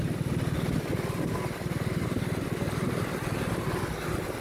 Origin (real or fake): real